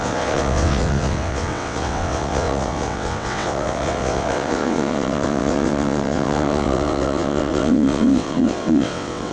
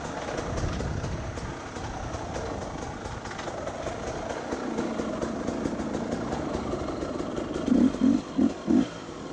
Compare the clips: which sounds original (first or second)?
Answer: second